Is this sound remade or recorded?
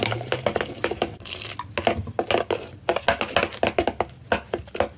recorded